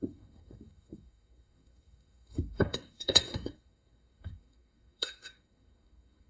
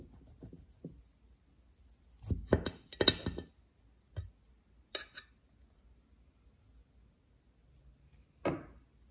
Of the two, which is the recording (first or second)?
second